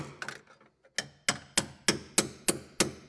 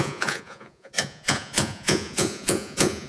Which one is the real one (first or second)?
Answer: first